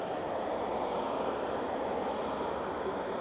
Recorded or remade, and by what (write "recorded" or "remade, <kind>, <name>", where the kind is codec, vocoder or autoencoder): recorded